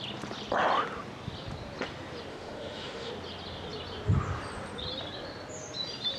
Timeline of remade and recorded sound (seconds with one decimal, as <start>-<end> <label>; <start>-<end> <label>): 0.0-2.3 recorded; 2.3-3.1 remade; 3.1-6.2 recorded

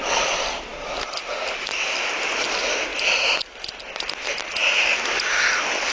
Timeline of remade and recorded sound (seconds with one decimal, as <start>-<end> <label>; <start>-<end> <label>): 0.0-5.9 recorded

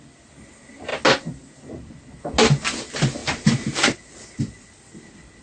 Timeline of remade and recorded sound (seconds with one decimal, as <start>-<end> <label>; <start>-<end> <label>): 0.0-5.4 recorded

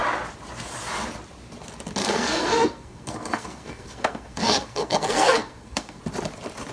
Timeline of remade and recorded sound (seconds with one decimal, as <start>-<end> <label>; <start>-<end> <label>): 0.0-2.0 recorded; 2.0-6.0 remade; 6.0-6.7 recorded

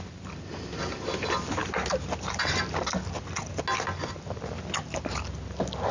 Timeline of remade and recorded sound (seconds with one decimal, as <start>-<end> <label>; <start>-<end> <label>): 0.0-5.9 recorded